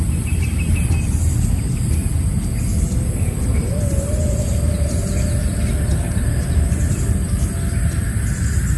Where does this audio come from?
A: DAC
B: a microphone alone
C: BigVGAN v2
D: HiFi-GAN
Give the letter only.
B